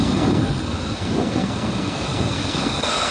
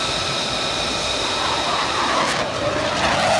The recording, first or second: second